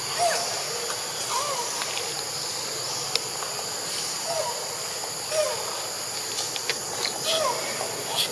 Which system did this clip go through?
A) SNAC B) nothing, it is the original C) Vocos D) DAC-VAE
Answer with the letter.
B